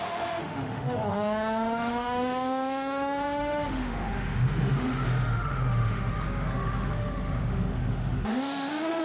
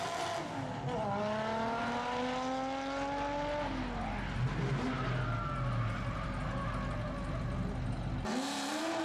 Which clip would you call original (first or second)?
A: second